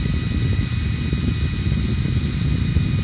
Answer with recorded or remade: recorded